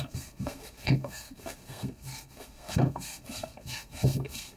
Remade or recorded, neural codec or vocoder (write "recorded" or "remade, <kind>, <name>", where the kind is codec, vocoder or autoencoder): remade, codec, SNAC